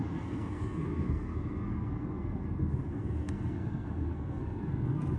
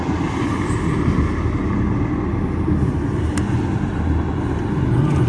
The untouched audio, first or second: second